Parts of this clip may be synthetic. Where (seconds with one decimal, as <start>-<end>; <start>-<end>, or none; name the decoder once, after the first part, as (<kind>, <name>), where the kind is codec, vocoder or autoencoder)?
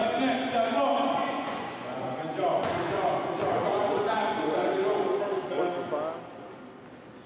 1.2-5.6 (vocoder, Vocos)